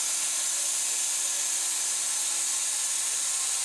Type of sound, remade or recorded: recorded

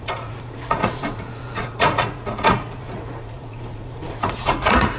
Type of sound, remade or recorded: remade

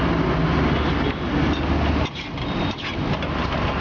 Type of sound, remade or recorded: recorded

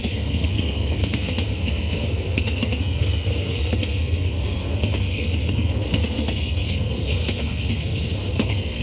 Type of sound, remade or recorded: remade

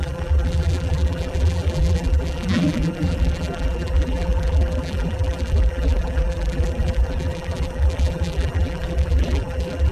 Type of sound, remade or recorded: remade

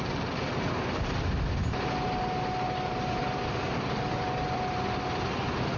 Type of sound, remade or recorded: recorded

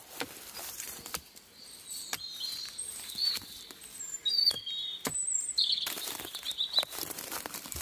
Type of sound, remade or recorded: remade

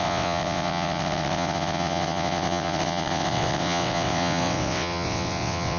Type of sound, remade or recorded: remade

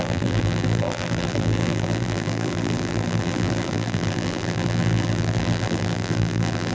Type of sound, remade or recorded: remade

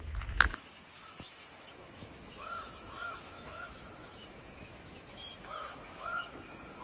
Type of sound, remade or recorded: remade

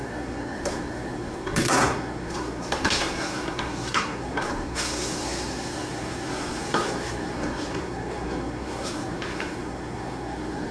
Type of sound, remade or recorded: remade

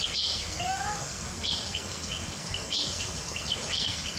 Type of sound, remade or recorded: remade